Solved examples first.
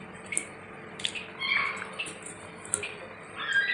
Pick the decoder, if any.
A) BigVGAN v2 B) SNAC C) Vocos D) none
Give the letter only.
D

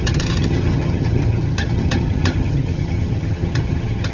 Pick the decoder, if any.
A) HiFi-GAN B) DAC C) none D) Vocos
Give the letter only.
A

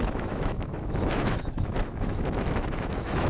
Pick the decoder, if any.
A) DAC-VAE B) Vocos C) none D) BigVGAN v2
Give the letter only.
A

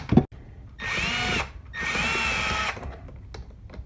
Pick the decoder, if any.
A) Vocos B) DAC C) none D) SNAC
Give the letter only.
C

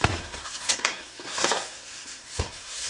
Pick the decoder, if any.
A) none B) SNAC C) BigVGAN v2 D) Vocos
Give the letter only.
B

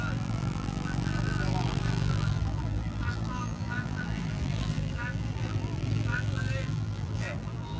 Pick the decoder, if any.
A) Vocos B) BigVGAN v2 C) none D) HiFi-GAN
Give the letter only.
B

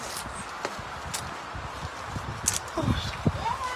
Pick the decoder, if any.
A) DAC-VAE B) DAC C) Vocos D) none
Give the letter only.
D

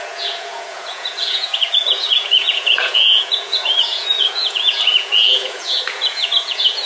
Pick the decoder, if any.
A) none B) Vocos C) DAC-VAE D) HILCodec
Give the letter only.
B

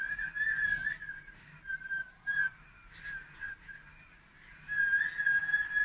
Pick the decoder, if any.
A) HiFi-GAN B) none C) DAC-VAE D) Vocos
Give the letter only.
B